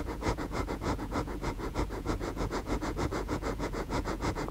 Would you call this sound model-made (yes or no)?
yes